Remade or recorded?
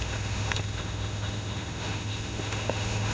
remade